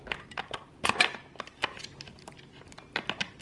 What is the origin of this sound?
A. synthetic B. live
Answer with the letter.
B